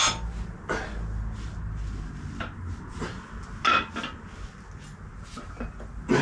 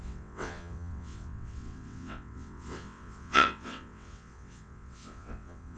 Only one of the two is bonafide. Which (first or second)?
first